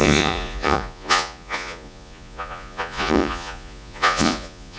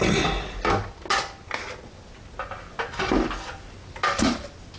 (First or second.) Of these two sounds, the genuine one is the second